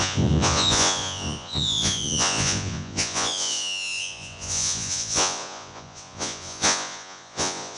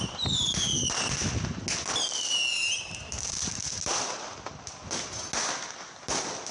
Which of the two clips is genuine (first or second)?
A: second